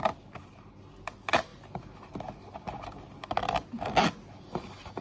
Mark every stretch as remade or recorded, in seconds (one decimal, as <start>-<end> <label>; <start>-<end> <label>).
0.0-5.0 recorded